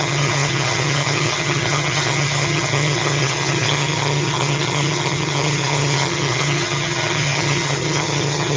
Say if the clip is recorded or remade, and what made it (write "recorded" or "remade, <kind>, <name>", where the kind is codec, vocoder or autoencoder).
remade, vocoder, HiFi-GAN